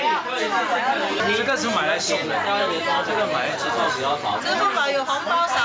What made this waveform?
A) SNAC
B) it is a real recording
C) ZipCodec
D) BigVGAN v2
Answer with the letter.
B